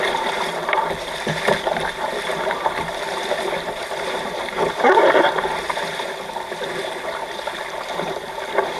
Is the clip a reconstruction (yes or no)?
yes